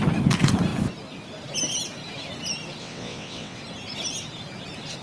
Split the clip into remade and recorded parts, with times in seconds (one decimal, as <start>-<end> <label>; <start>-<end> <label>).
0.0-2.8 recorded; 2.8-3.6 remade; 3.6-5.0 recorded

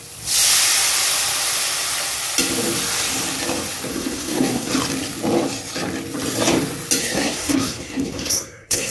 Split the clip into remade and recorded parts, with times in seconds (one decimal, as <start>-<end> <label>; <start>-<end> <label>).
0.0-3.9 recorded; 3.9-4.7 remade; 4.7-7.0 recorded; 7.0-8.9 remade

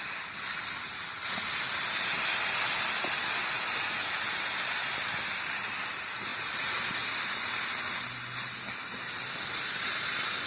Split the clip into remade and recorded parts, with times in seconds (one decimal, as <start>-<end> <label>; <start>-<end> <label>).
0.0-10.5 recorded